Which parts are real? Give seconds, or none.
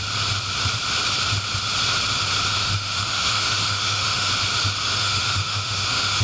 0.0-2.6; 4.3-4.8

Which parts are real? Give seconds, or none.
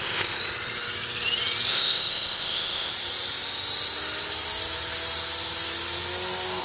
0.4-1.7; 2.9-6.6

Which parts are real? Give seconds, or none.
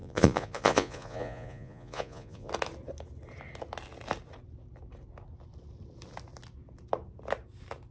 2.5-7.9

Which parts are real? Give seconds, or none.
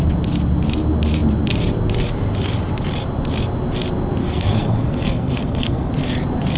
0.0-4.2; 5.9-6.6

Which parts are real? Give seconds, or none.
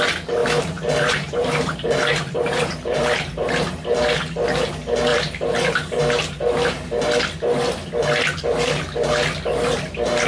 0.0-0.4; 3.5-5.1; 6.0-10.3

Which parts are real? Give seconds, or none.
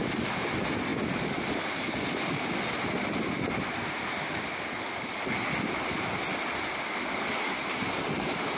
0.0-8.6